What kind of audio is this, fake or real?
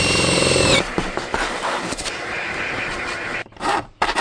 fake